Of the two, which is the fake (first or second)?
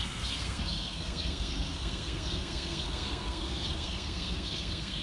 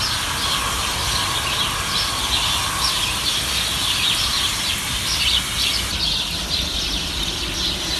first